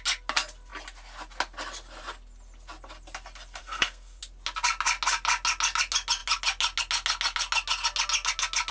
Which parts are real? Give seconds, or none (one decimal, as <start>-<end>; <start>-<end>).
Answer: 0.0-3.6; 4.2-8.7